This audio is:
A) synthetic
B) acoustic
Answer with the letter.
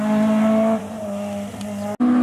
B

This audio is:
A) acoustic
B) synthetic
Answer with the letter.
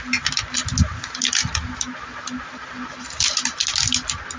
A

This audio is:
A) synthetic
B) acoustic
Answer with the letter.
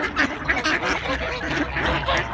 B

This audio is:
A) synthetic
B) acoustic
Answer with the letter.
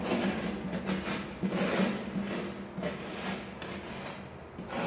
B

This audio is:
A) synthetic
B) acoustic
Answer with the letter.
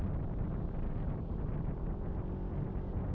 B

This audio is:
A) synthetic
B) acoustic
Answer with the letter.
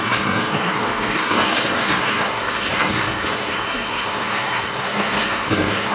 A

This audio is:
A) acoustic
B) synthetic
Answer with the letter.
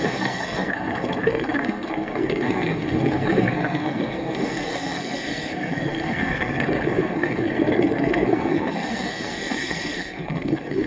B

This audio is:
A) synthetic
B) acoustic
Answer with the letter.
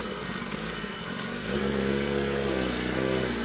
A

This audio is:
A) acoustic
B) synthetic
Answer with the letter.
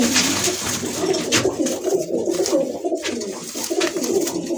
A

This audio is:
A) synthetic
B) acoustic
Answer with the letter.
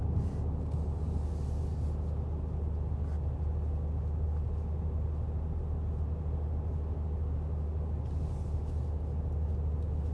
B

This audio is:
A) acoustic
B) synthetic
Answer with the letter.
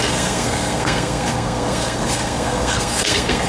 B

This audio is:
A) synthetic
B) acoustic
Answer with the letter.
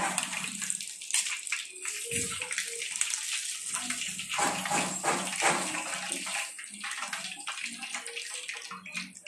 B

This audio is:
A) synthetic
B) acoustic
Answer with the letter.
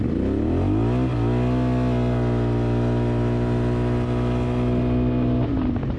B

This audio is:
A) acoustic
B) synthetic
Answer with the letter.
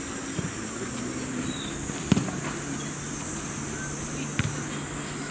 A